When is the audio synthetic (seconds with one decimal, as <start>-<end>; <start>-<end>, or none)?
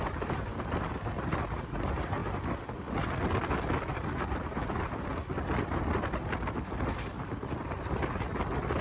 0.0-0.5; 1.3-2.2; 3.9-5.1